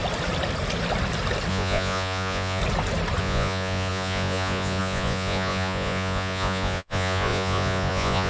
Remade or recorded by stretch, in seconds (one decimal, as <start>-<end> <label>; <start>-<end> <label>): 0.0-1.5 recorded; 1.5-2.6 remade; 2.6-3.2 recorded; 3.2-8.3 remade